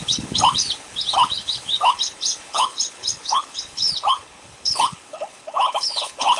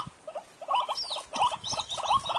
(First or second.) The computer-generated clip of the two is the first